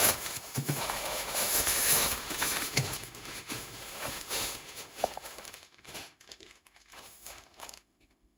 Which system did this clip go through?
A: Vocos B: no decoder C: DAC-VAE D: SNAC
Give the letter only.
C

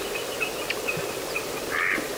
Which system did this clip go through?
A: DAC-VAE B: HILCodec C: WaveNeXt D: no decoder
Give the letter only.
D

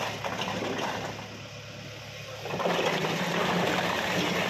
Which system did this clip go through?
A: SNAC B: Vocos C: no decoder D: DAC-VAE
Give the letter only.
C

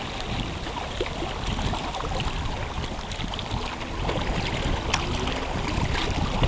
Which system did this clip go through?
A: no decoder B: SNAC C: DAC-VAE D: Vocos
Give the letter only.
A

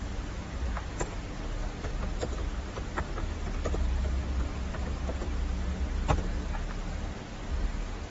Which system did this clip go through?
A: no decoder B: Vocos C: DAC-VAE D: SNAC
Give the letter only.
A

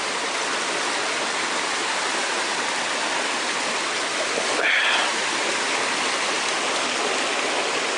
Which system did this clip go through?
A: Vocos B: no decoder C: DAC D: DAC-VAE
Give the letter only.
B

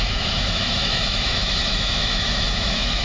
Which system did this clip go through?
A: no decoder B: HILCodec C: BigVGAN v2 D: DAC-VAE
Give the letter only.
D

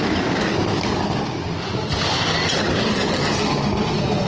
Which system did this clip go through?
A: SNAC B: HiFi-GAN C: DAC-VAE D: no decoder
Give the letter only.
D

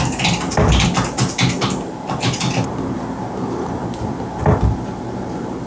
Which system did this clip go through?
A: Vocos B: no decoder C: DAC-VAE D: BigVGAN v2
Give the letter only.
B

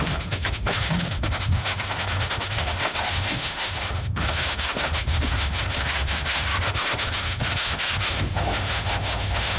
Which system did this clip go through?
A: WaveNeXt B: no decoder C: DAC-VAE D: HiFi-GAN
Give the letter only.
C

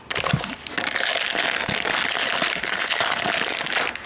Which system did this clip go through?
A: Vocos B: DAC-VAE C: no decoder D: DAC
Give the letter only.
C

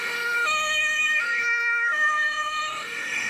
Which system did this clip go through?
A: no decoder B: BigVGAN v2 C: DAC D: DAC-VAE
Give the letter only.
D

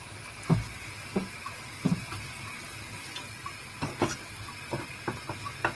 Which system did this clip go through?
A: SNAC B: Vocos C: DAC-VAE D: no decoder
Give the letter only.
D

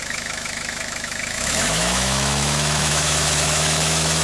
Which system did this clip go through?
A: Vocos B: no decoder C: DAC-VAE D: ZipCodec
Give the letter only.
C